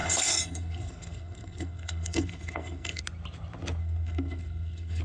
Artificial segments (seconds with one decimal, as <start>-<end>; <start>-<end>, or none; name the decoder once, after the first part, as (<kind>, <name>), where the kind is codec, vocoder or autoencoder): 0.0-3.0 (codec, SNAC); 3.8-5.0